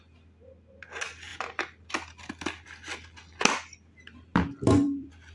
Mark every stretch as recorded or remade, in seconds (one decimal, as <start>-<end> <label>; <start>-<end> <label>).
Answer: 0.0-4.3 recorded; 4.3-5.3 remade